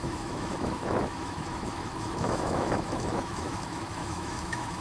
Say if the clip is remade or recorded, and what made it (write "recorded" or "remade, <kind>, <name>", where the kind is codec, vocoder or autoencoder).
remade, autoencoder, DAC-VAE